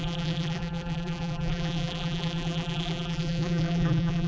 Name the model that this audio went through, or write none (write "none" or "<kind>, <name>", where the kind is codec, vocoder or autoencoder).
vocoder, BigVGAN v2